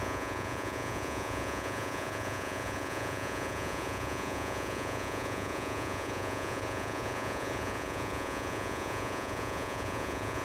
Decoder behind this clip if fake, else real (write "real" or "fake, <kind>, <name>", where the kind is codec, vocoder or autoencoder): fake, vocoder, Vocos